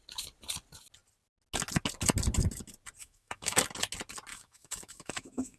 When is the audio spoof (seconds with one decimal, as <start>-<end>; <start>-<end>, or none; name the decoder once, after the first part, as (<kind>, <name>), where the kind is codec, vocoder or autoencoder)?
3.0-3.6 (autoencoder, DAC-VAE); 4.3-5.6